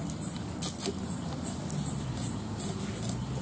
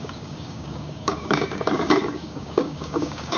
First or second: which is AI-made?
second